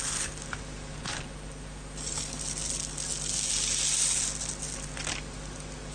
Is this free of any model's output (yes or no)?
yes